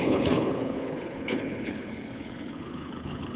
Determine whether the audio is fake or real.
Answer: fake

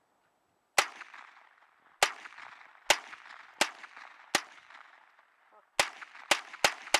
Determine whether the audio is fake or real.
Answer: real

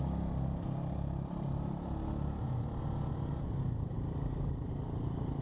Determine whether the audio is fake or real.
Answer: real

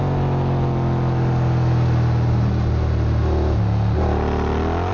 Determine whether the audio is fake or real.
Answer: real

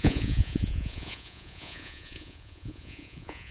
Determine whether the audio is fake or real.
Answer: fake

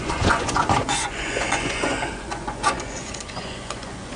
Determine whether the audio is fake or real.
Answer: fake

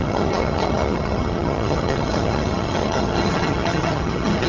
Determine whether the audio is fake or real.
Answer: fake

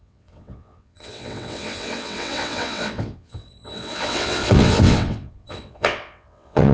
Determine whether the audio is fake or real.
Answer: fake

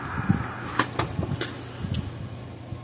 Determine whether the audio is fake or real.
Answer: real